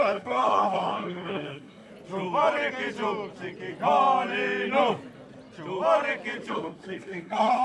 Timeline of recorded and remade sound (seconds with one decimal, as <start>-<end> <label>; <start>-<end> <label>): 0.0-1.9 remade; 1.9-6.5 recorded; 6.5-7.6 remade

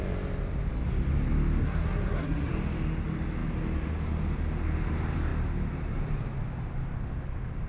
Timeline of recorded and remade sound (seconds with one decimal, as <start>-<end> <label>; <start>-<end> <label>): 0.0-1.6 recorded; 1.6-2.5 remade; 2.5-7.7 recorded

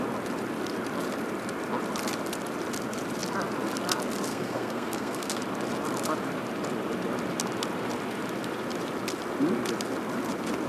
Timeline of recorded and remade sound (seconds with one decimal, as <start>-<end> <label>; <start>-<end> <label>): 0.0-4.3 recorded; 4.3-5.4 remade; 5.4-10.7 recorded

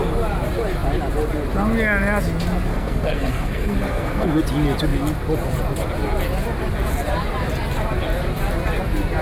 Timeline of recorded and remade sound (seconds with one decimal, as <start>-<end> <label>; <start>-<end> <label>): 0.0-2.7 recorded; 2.7-4.4 remade; 4.4-9.2 recorded

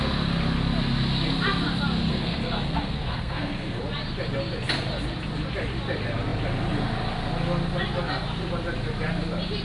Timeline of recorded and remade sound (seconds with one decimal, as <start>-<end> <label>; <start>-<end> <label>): 0.0-2.1 recorded; 2.1-3.8 remade; 3.8-9.6 recorded

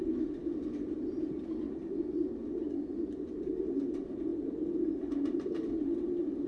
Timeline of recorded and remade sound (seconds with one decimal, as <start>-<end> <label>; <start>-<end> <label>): 0.0-6.5 recorded

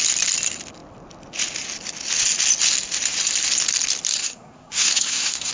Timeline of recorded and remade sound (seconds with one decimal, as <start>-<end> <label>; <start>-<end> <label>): 0.0-4.2 recorded; 4.2-5.5 remade